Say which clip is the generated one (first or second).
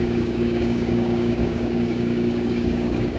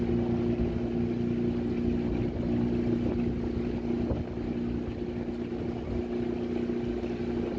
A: first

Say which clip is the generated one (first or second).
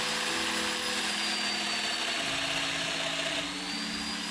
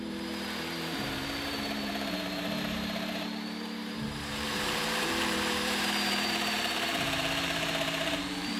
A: second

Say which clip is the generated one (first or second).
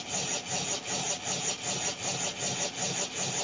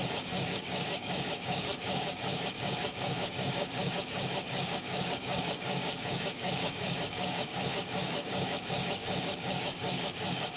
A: second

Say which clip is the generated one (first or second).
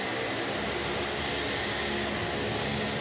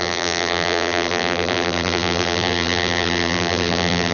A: second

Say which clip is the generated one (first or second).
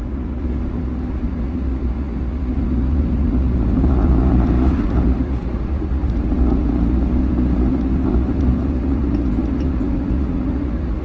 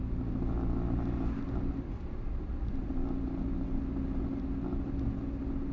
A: first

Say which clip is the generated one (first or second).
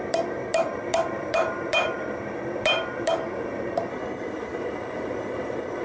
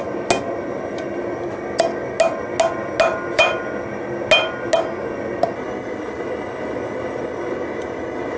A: first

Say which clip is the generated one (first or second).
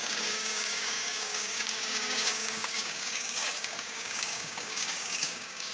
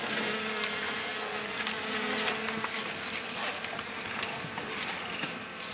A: first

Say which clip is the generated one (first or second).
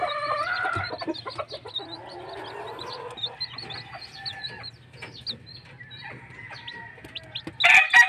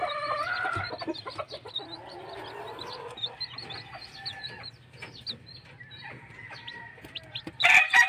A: second